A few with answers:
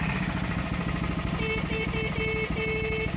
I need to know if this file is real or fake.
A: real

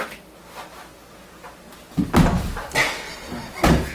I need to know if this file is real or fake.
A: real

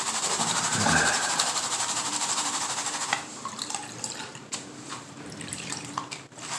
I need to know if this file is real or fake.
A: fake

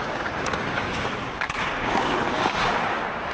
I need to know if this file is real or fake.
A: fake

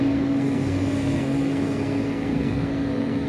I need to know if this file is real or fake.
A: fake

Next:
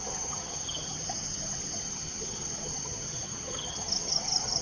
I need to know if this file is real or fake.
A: fake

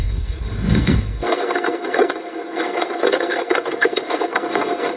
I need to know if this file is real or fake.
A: fake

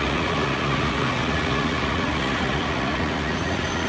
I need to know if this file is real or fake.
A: fake